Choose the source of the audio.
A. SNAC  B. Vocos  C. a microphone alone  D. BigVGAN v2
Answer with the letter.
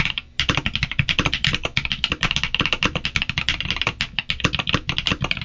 C